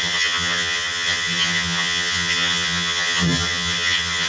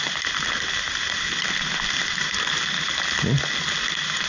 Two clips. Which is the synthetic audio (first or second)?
first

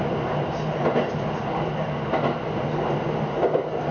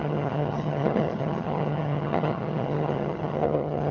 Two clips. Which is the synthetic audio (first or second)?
second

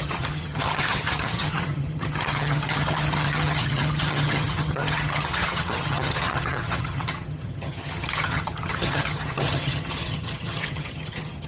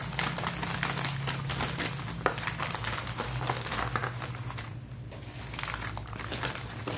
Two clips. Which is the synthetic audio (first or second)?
first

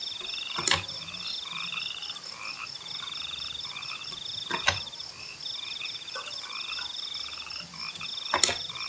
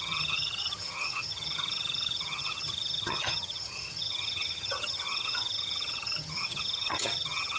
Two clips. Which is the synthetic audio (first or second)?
second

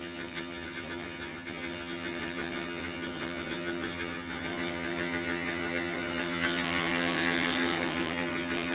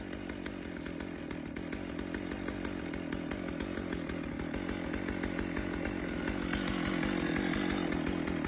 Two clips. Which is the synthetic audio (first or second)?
first